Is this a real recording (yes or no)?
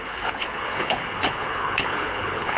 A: no